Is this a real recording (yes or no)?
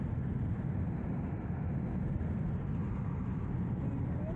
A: yes